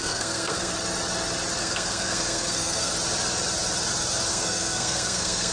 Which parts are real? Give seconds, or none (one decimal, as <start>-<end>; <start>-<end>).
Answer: 0.7-1.6; 2.9-4.3